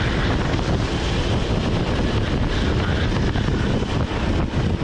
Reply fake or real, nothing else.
real